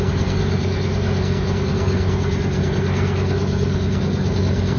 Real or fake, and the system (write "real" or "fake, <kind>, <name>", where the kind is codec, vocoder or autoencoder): fake, codec, SNAC